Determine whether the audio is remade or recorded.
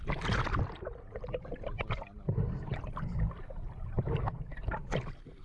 remade